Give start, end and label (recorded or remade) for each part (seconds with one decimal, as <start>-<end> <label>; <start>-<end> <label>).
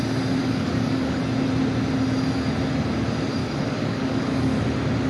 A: 0.0-0.4 recorded; 0.4-1.2 remade; 1.2-3.4 recorded; 3.4-4.6 remade; 4.6-5.1 recorded